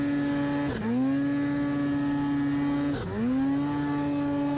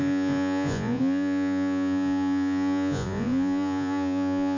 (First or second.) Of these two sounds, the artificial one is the second